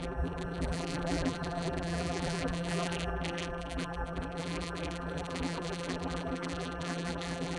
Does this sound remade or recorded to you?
remade